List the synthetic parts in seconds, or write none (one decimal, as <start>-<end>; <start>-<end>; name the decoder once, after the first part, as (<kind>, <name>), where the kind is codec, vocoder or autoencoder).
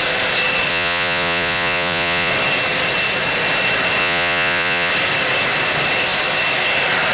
0.7-2.3 (vocoder, Vocos); 4.0-4.9